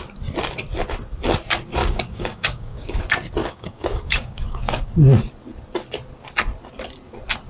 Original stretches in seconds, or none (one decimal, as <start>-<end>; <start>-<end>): 0.0-1.8; 3.0-3.4; 4.9-7.5